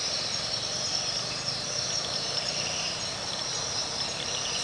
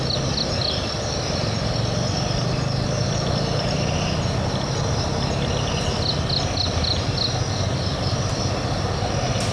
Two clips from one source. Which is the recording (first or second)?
second